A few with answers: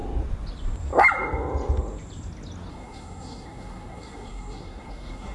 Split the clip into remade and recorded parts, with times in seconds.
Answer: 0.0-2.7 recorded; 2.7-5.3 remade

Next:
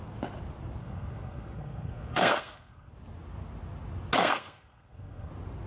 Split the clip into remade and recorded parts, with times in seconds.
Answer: 0.0-0.8 recorded; 0.8-2.9 remade; 2.9-4.2 recorded; 4.2-5.3 remade; 5.3-5.7 recorded

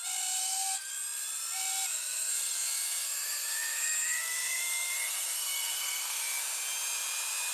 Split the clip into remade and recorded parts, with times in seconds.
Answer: 0.0-0.4 recorded; 0.4-0.9 remade; 0.9-1.9 recorded; 1.9-6.4 remade; 6.4-7.5 recorded

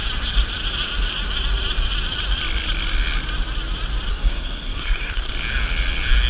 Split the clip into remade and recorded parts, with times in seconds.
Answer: 0.0-4.1 recorded; 4.1-5.3 remade; 5.3-6.3 recorded

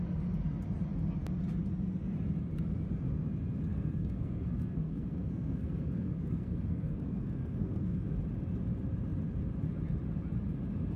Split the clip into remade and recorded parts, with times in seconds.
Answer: 0.0-3.7 recorded; 3.7-8.0 remade; 8.0-11.0 recorded

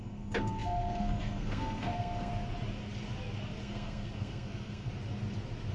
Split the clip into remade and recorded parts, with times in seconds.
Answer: 0.0-2.3 remade; 2.3-3.6 recorded; 3.6-4.9 remade; 4.9-5.7 recorded

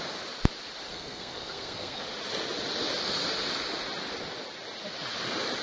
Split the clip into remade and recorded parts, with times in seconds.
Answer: 0.0-0.9 recorded; 0.9-2.0 remade; 2.0-5.6 recorded

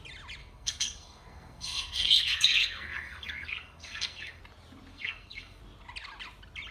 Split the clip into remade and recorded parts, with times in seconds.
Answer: 0.0-0.4 recorded; 0.4-4.4 remade; 4.4-4.9 recorded; 4.9-5.6 remade; 5.6-6.7 recorded